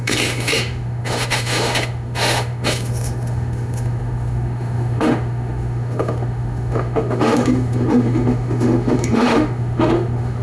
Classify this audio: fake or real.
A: fake